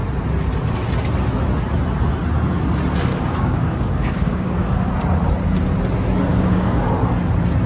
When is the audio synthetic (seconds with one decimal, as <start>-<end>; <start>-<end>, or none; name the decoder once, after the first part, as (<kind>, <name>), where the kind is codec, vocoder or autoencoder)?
3.1-4.9 (codec, DAC); 6.3-6.9